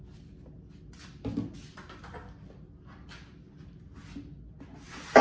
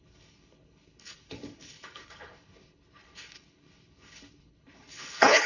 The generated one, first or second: second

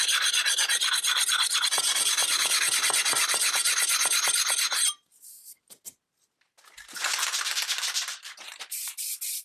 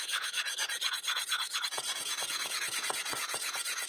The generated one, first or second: second